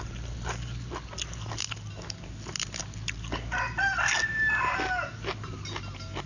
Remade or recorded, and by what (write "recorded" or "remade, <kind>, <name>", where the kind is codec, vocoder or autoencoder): recorded